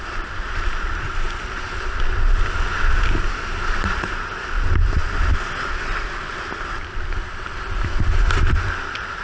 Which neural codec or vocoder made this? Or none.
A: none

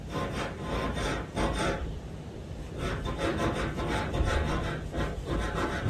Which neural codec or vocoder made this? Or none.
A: vocoder, BigVGAN v2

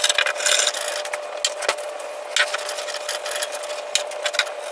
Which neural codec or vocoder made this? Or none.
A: none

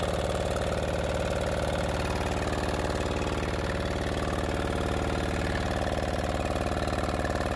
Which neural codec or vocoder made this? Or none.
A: none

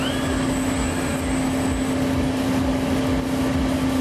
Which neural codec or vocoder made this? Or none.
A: none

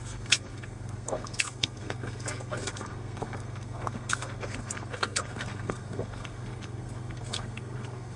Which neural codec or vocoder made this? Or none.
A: codec, SNAC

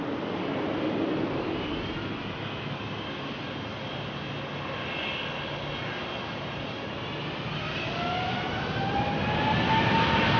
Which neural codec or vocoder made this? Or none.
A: none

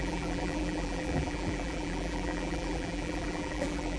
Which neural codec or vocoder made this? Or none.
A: vocoder, BigVGAN v2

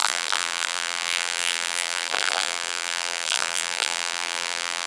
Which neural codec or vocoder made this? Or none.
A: vocoder, BigVGAN v2